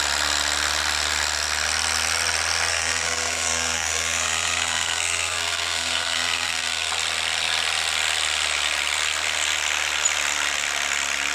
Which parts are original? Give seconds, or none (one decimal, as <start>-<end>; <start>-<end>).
0.0-2.7; 6.9-11.3